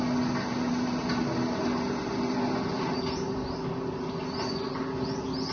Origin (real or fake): real